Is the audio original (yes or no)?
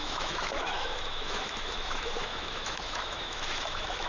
no